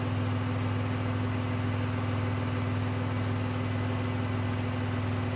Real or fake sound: real